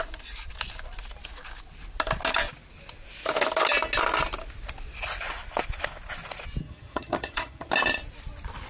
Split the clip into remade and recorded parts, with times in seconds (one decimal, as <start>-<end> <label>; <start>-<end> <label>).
0.0-6.6 recorded; 6.6-7.7 remade; 7.7-8.7 recorded